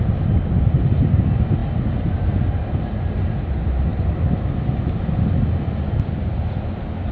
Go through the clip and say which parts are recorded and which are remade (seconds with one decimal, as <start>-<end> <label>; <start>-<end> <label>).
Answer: 0.0-7.1 recorded